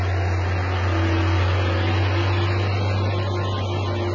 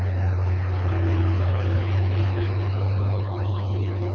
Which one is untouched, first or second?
first